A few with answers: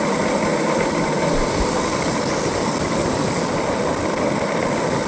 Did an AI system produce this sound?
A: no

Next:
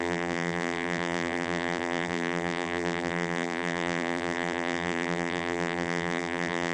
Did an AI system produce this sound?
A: yes